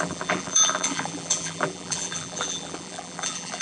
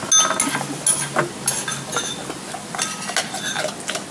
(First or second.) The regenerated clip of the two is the first